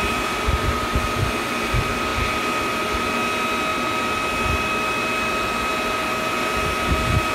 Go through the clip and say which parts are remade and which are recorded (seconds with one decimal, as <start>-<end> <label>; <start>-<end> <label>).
0.0-7.3 recorded